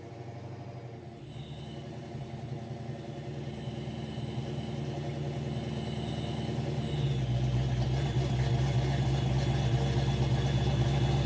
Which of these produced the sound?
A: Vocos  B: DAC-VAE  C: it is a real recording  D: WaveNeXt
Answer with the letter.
C